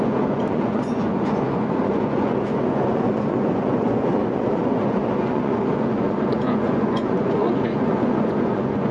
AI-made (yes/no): yes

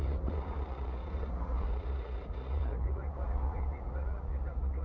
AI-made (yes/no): yes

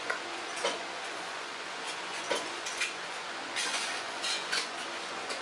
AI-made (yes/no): yes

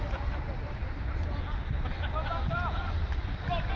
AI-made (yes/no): no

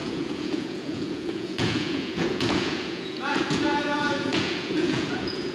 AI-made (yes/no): yes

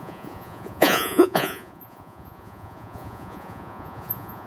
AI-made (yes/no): yes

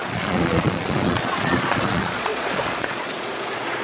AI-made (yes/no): yes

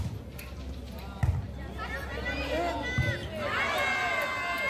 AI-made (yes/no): no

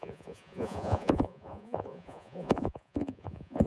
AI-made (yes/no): yes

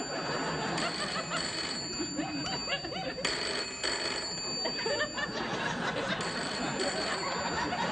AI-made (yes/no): no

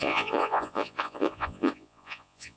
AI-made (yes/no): yes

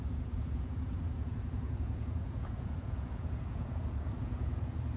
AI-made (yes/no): yes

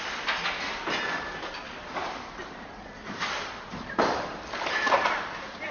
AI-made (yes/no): no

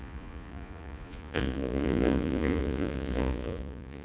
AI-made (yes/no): yes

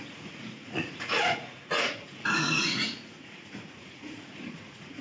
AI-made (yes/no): yes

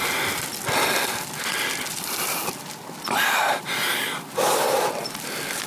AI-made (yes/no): no